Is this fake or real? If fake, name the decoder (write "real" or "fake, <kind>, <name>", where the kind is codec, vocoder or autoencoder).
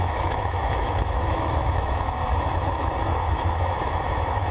fake, autoencoder, DAC-VAE